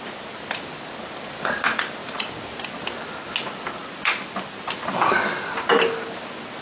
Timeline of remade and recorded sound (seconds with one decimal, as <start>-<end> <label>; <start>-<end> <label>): 0.0-6.6 recorded